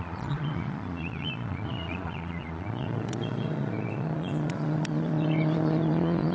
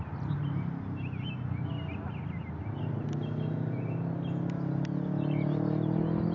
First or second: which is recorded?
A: second